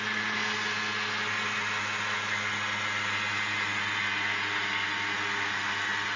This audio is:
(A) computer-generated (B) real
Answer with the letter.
B